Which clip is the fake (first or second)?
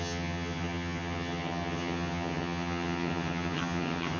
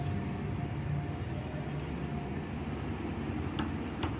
first